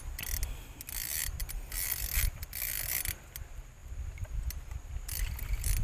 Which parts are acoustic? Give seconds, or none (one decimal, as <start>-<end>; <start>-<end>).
0.0-5.8

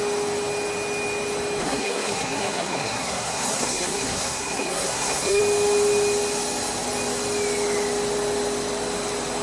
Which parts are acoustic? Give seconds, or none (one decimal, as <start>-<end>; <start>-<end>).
0.0-1.6; 5.4-9.4

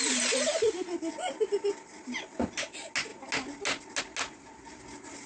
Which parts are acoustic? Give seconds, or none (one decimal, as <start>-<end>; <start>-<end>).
0.0-5.3

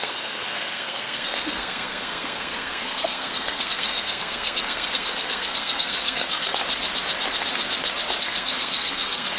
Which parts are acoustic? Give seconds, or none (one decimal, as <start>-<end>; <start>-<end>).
6.6-8.2

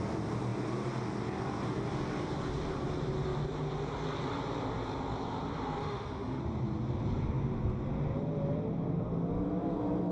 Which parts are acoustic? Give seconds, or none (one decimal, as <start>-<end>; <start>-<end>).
0.0-5.8; 6.4-10.1